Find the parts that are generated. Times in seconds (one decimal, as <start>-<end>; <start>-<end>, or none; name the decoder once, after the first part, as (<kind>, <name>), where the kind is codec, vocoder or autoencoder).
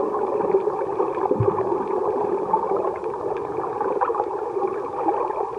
none